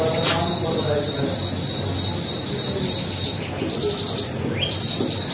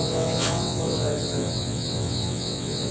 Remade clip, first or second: second